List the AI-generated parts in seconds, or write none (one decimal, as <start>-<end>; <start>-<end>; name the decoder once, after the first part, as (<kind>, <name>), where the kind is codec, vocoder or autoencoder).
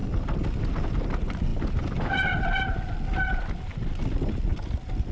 none